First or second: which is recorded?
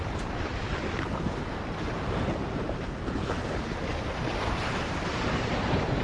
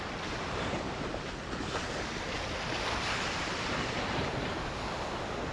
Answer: second